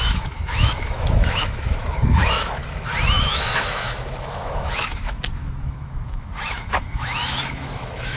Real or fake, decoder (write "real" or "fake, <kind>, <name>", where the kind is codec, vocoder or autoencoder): fake, autoencoder, DAC-VAE